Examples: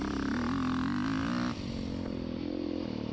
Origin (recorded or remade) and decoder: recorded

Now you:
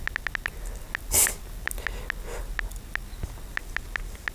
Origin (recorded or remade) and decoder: recorded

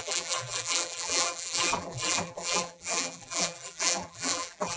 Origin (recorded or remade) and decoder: remade, vocoder, BigVGAN v2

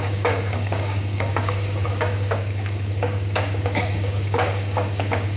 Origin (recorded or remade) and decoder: remade, codec, DAC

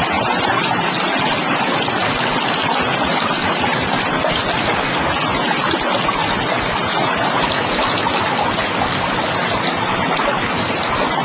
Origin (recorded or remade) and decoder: recorded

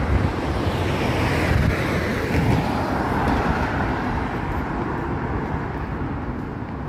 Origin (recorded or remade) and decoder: recorded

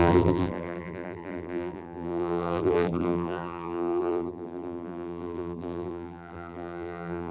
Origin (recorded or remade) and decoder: remade, vocoder, BigVGAN v2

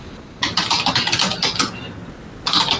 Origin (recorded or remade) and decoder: recorded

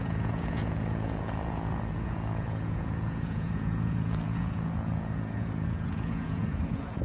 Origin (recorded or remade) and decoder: remade, vocoder, Vocos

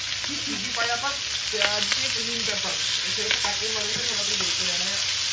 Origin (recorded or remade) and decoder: recorded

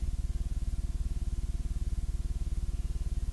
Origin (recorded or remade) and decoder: recorded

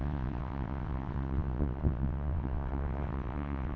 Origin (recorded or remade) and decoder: remade, vocoder, WaveNeXt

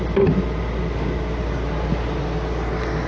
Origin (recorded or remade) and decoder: recorded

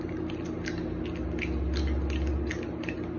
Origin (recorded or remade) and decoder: recorded